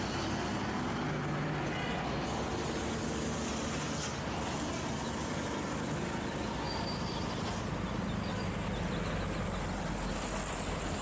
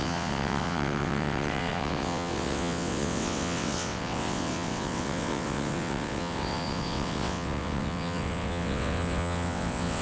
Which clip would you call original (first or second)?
first